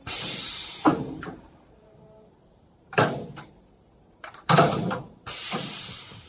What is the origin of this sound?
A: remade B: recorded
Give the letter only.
A